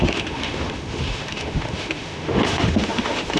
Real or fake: fake